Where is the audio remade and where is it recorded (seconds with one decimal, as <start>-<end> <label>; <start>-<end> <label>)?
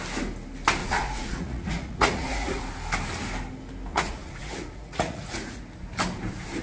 0.0-0.8 recorded; 0.8-2.6 remade; 2.6-3.9 recorded; 3.9-5.6 remade; 5.6-6.6 recorded